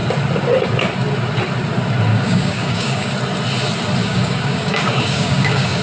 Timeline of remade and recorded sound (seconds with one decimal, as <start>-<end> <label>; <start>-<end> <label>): 0.0-2.1 recorded; 2.1-3.1 remade; 3.1-4.0 recorded; 4.0-5.8 remade